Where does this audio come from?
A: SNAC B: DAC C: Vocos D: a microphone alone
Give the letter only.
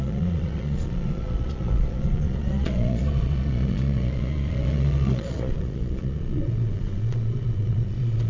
C